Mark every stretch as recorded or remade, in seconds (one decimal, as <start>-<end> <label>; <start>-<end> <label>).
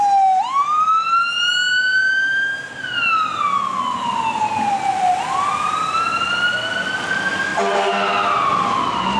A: 0.0-5.5 recorded; 5.5-6.3 remade; 6.3-9.2 recorded